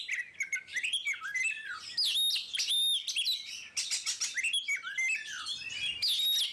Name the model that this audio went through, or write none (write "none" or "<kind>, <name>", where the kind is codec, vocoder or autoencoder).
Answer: none